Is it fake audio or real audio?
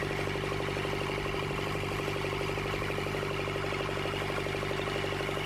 real